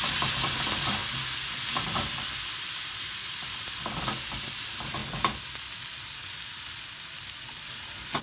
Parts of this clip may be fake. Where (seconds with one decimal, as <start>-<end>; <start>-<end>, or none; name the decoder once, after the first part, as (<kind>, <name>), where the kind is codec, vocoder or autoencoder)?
0.0-1.0 (vocoder, BigVGAN v2); 4.3-5.0; 7.0-8.2